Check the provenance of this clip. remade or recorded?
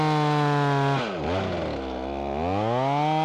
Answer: recorded